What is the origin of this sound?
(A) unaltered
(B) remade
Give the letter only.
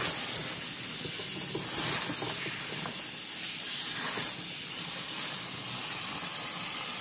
A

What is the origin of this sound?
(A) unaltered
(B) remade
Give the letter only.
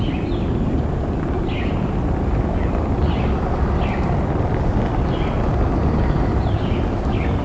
A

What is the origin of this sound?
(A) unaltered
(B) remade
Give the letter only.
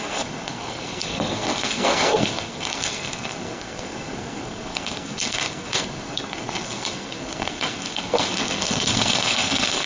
B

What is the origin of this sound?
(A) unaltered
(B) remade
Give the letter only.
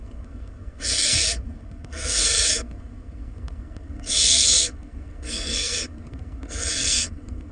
B